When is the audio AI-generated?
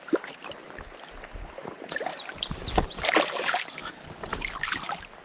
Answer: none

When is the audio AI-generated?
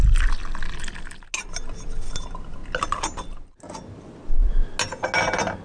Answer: none